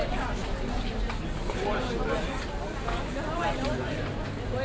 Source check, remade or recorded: recorded